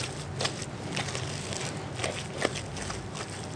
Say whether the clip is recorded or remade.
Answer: recorded